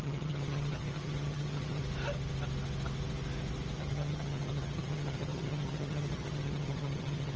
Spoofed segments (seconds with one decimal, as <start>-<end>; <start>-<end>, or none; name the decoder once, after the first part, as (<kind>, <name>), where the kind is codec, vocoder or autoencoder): 0.0-1.8 (vocoder, HiFi-GAN); 3.8-7.4